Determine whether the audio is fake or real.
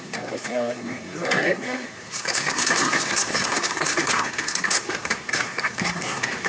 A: fake